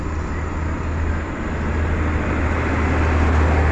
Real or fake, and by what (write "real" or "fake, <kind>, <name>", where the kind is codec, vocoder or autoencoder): real